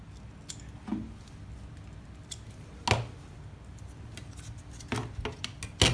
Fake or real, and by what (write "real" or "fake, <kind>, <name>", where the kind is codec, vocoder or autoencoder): real